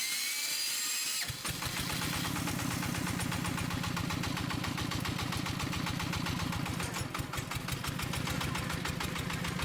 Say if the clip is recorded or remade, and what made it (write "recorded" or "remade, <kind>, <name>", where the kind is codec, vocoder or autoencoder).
recorded